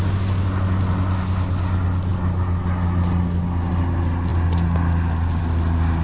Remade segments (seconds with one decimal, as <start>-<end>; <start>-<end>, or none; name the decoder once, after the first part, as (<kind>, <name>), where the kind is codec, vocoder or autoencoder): none